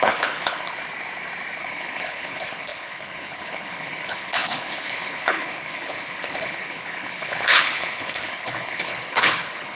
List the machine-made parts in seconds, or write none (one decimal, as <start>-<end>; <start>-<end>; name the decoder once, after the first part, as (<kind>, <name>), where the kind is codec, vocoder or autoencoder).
0.0-0.7 (codec, HILCodec); 1.6-9.8

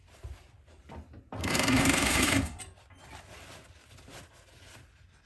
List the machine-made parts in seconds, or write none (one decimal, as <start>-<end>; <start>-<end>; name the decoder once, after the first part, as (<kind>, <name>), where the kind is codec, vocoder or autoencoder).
1.4-2.6 (codec, SNAC)

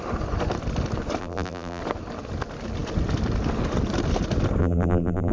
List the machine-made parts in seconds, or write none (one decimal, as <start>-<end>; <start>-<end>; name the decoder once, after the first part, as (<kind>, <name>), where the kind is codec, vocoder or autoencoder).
1.2-1.8 (vocoder, BigVGAN v2); 4.6-5.3

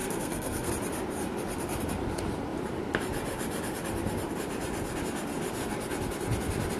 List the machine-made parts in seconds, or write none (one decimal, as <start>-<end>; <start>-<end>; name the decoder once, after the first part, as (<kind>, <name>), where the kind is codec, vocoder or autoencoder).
0.0-0.7 (codec, SNAC)

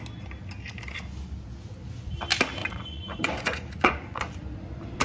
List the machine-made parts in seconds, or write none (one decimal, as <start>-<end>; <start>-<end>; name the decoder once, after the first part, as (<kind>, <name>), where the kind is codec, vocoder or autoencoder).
2.6-4.4 (vocoder, Vocos)